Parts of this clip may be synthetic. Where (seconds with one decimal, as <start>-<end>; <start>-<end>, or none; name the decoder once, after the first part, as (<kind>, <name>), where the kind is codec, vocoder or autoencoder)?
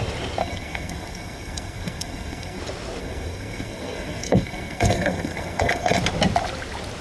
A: 0.4-2.6 (codec, SNAC); 3.0-6.0